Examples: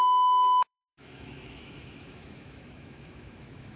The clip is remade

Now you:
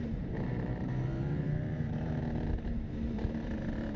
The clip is remade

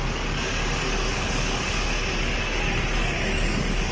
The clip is remade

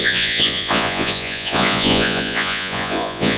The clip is remade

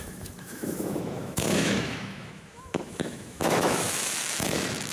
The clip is remade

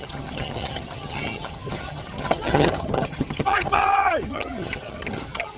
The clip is remade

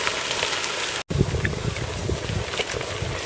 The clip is recorded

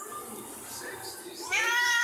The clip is recorded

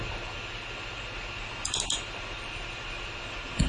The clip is recorded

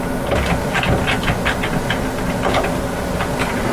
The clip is recorded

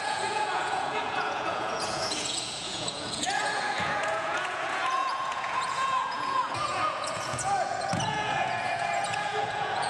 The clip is remade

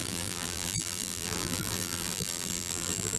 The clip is remade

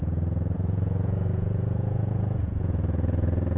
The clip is remade